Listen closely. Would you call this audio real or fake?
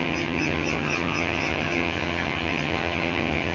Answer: fake